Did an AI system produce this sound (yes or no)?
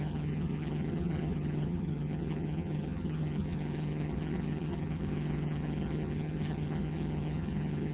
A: yes